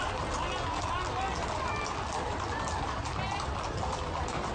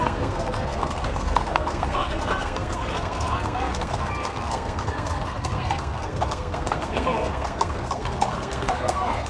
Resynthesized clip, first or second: second